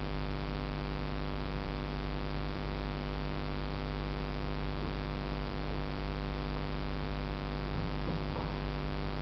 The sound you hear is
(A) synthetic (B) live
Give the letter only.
A